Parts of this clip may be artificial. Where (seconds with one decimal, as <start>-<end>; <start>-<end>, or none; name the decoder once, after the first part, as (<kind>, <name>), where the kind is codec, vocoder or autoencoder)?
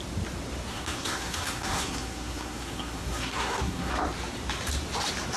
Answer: 0.7-3.9 (codec, SNAC)